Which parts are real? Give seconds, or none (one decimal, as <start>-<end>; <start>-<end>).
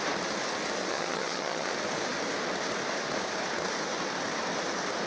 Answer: 0.0-0.9; 1.7-5.1